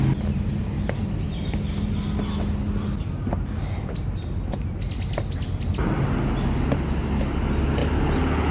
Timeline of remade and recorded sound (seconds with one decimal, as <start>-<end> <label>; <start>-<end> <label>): 0.0-7.8 recorded; 7.8-8.5 remade